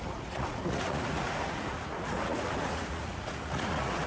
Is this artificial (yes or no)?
yes